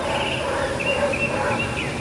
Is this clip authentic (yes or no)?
yes